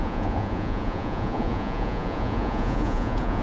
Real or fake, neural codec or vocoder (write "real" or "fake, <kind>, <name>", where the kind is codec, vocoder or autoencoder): fake, vocoder, Vocos